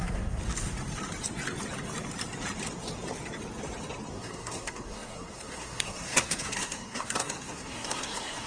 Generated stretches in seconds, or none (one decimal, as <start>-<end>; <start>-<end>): 0.0-0.4; 4.1-8.5